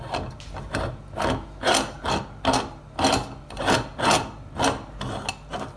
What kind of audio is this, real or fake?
real